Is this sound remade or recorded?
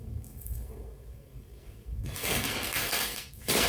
remade